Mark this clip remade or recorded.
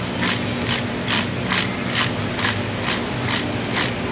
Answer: recorded